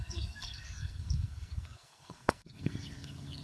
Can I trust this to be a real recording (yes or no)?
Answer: no